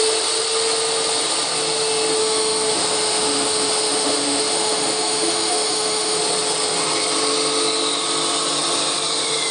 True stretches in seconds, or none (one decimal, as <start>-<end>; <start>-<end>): 0.0-2.2; 6.2-9.5